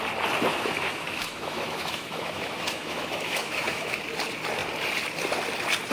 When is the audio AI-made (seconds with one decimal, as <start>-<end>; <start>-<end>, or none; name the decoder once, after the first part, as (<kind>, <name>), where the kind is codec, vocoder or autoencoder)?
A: 0.5-4.0 (autoencoder, DAC-VAE)